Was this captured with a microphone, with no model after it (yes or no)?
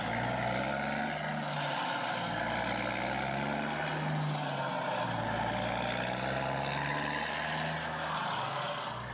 yes